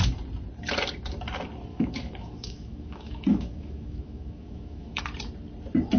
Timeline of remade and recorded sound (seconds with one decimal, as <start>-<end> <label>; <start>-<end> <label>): 0.0-1.7 recorded; 1.7-5.0 remade; 5.0-6.0 recorded